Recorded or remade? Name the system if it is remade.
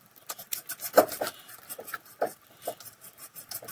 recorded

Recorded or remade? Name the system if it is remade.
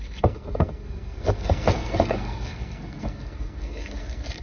remade, codec, SNAC